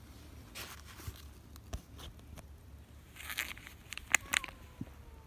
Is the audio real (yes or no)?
yes